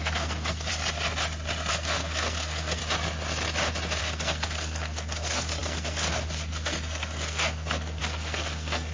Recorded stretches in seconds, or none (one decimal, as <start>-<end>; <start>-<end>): 0.7-1.7; 2.8-4.0